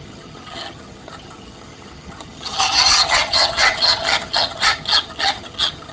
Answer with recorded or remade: remade